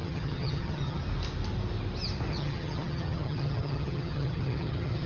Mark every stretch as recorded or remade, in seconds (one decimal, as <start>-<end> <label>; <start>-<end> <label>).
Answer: 0.0-1.0 remade; 1.0-2.3 recorded; 2.3-5.1 remade